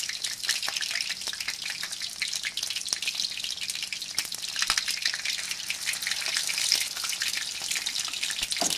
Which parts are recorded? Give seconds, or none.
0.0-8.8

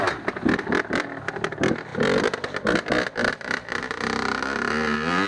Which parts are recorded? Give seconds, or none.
0.0-5.3

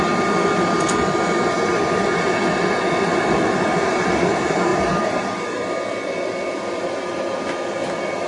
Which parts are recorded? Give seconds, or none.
0.0-8.3

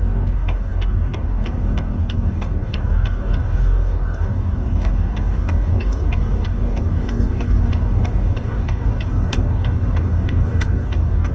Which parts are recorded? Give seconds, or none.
none

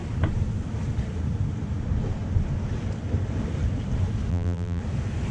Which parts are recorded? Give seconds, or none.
0.0-4.3; 4.8-5.3

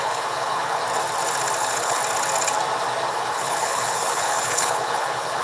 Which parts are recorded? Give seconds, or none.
0.8-1.6; 2.0-3.1

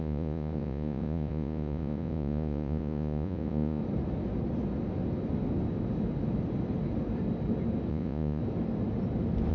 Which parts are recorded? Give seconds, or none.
3.8-7.9; 8.4-9.5

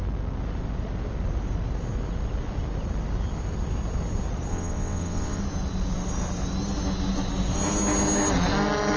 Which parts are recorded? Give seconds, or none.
0.0-4.5; 5.4-9.0